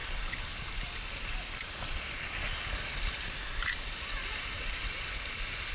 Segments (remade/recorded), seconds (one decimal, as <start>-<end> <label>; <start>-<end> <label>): 0.0-5.7 recorded